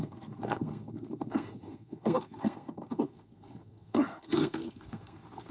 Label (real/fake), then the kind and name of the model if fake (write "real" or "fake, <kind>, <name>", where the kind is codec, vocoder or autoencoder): fake, codec, SNAC